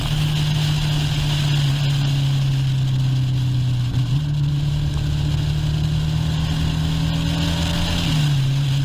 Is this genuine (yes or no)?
yes